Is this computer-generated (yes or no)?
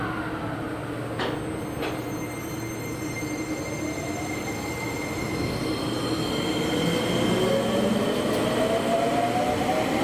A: no